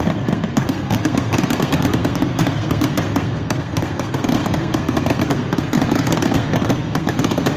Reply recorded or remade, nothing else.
remade